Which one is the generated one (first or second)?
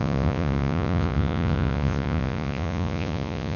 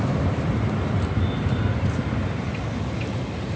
first